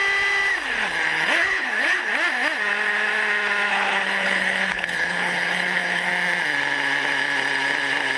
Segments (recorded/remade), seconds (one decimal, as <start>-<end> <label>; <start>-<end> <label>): 0.0-1.1 recorded; 1.1-2.1 remade; 2.1-3.7 recorded; 3.7-6.1 remade; 6.1-8.2 recorded